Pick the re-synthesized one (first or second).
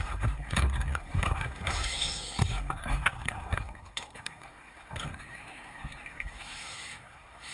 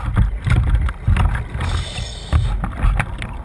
first